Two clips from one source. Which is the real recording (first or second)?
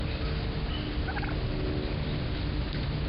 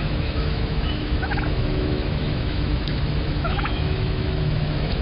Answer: first